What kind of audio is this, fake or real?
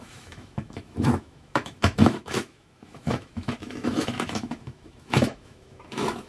fake